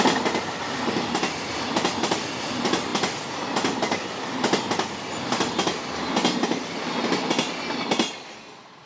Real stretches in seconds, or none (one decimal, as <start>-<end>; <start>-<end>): 0.0-8.9